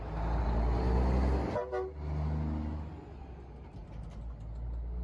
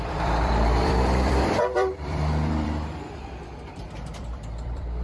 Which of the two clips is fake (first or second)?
second